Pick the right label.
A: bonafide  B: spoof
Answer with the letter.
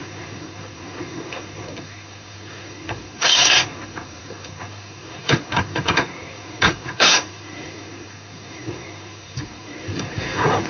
B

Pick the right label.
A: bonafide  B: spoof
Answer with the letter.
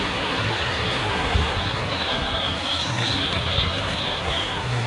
B